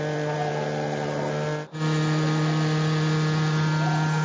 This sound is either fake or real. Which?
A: real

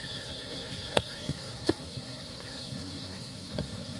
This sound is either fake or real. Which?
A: fake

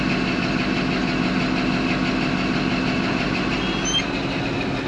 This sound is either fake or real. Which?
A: real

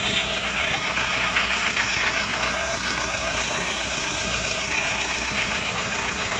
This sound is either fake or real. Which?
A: fake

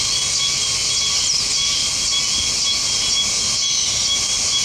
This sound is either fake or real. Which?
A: real